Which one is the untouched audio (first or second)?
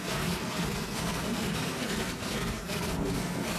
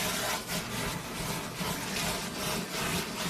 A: second